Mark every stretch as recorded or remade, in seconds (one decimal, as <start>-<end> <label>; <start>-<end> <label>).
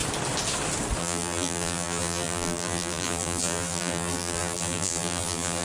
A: 0.0-1.0 recorded; 1.0-5.6 remade